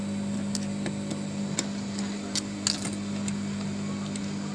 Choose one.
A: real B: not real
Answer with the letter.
A